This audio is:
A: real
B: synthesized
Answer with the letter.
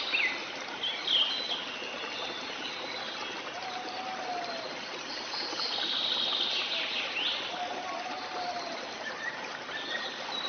A